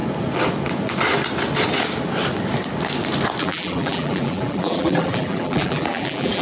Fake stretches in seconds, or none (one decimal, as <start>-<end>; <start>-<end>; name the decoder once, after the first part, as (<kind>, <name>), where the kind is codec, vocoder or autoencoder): 3.4-6.4 (vocoder, BigVGAN v2)